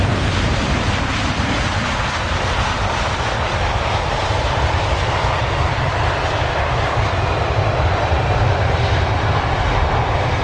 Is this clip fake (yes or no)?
yes